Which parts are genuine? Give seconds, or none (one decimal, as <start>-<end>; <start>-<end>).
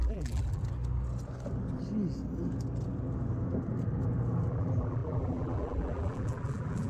0.6-4.5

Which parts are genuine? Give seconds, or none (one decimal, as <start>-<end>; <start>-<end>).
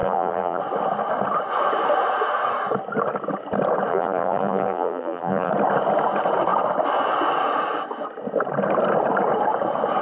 0.6-3.9; 5.5-10.0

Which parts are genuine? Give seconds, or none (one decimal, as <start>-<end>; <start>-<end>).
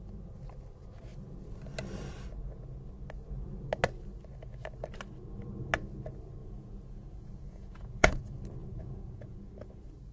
0.0-6.4; 8.2-8.6; 9.5-10.1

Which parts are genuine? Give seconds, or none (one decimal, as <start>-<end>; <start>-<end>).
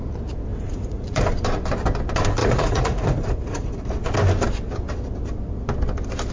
0.0-0.5; 1.3-2.4; 3.9-6.3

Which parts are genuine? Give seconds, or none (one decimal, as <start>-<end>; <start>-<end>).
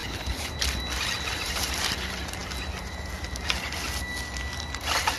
0.5-5.2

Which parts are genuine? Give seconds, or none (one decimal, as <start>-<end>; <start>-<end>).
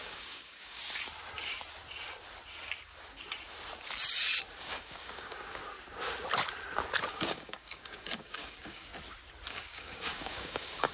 0.8-4.6; 5.6-7.1; 8.9-9.5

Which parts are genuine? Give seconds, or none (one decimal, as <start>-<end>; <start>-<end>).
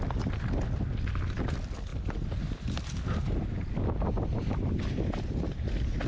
0.0-6.1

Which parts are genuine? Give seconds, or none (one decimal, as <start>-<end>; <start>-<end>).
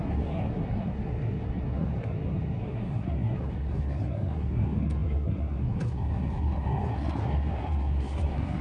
none